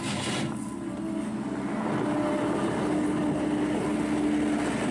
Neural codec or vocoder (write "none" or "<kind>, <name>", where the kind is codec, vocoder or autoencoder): none